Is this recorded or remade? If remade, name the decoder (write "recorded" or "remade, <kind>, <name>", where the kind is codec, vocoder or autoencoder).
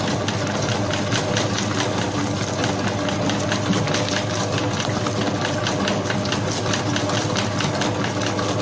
recorded